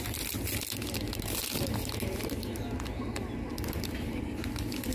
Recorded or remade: recorded